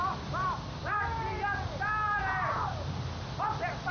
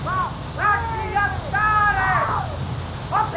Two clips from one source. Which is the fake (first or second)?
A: first